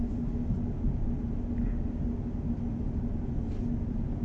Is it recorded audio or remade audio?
recorded